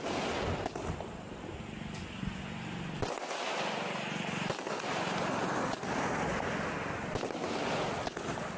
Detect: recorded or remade recorded